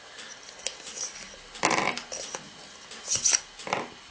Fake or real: real